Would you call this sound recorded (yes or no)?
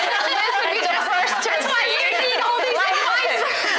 no